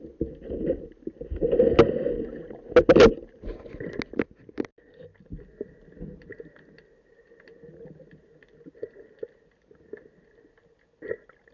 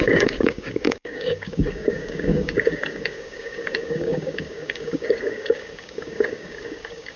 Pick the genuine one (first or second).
first